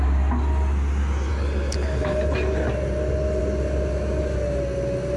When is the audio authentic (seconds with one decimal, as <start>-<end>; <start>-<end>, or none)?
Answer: 0.0-5.2